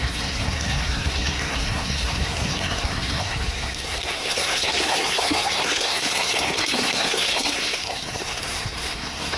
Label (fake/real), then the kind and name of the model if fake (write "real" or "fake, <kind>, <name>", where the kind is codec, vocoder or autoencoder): fake, codec, SNAC